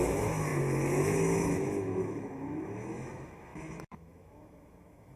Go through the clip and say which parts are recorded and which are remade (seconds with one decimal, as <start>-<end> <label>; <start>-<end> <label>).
0.0-5.2 remade